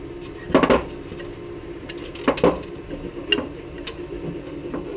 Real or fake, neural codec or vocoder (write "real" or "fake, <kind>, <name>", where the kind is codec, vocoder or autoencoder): real